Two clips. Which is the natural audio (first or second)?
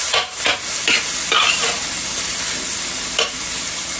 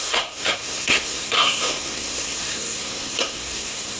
first